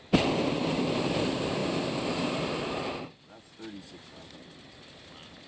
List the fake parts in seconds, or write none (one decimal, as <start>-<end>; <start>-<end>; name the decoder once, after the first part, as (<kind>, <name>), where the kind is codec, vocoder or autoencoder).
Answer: none